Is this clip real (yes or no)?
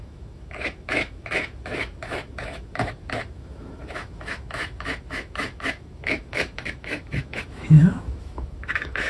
no